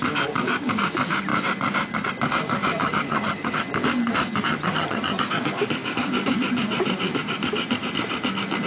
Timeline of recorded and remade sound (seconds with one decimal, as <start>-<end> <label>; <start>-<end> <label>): 0.0-2.8 recorded; 2.8-3.6 remade; 3.6-4.5 recorded; 4.5-5.2 remade; 5.2-8.7 recorded